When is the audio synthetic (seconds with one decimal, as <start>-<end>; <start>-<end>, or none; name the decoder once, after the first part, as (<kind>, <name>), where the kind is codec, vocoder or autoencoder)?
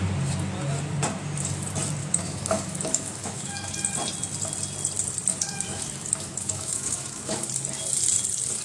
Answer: 2.0-3.7 (autoencoder, DAC-VAE); 5.3-7.5